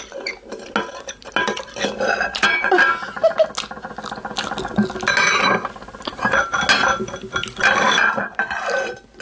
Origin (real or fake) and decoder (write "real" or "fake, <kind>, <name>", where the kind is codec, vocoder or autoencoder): real